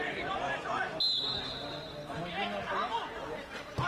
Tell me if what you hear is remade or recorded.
recorded